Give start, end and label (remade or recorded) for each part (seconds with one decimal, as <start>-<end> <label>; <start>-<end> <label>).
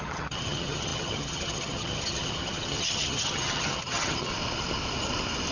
0.0-4.3 remade; 4.3-5.5 recorded